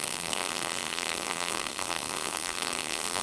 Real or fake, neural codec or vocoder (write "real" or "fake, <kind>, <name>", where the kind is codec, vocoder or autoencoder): fake, codec, SNAC